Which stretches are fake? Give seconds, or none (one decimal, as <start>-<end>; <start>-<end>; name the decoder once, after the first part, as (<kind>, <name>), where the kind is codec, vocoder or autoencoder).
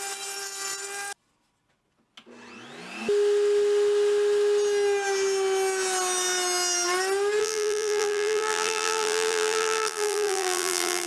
7.4-11.1 (vocoder, BigVGAN v2)